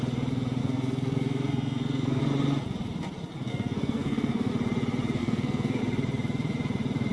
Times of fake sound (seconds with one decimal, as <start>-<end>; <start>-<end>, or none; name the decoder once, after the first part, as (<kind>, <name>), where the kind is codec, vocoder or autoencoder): 0.6-2.2 (codec, SNAC); 3.5-4.5; 5.2-5.8